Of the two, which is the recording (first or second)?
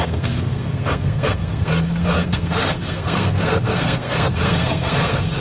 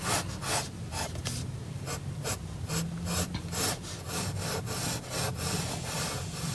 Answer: second